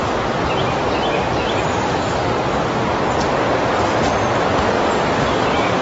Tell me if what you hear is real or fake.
real